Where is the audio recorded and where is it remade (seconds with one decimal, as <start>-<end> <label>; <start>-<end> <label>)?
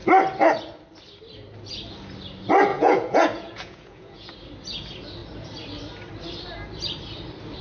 0.0-2.7 recorded; 2.7-4.3 remade; 4.3-7.6 recorded